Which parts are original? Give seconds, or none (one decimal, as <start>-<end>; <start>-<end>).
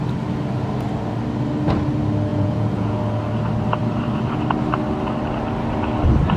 0.0-2.3; 3.0-6.4